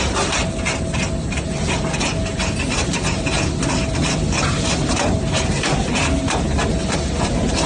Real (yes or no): yes